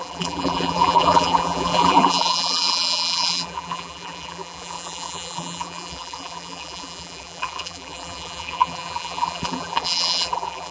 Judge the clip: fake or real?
fake